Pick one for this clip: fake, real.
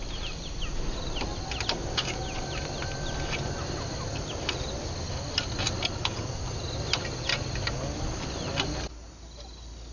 real